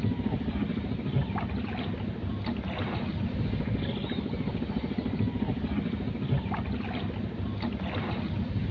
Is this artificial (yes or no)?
no